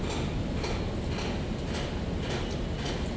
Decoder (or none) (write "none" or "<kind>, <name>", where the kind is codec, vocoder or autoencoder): none